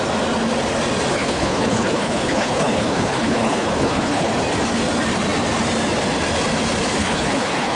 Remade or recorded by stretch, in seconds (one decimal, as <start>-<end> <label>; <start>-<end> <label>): 0.0-1.1 recorded; 1.1-4.3 remade; 4.3-7.0 recorded; 7.0-7.8 remade

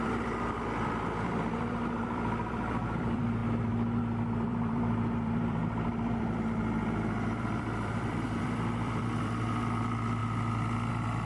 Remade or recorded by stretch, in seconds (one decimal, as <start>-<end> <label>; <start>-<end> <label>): 0.0-5.6 remade; 5.6-6.2 recorded; 6.2-10.2 remade; 10.2-10.9 recorded; 10.9-11.3 remade